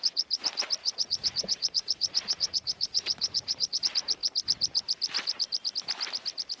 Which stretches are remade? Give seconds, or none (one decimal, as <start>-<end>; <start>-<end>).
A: 0.8-3.8